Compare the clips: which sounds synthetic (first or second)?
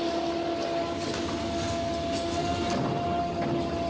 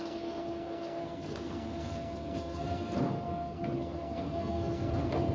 second